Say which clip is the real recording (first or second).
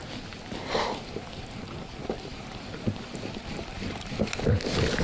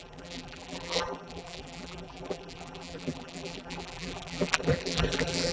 first